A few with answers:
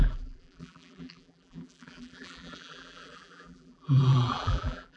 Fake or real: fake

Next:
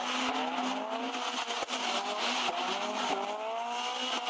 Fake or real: real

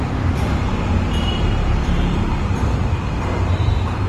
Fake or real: fake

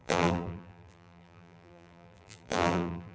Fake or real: fake